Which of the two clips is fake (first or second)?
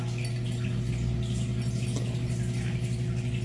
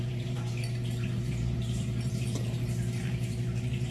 second